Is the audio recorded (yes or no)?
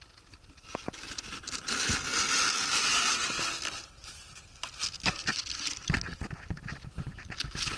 yes